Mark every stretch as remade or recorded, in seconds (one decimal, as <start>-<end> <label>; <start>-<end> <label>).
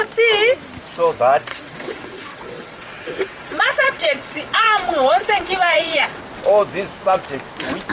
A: 0.0-1.5 recorded; 1.5-6.2 remade; 6.2-7.9 recorded